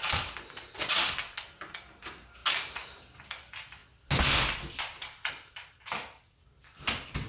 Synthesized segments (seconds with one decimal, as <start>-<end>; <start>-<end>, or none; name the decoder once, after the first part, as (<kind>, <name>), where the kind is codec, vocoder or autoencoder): none